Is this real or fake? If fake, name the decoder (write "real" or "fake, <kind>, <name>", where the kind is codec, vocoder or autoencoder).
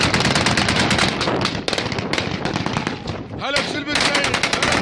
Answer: real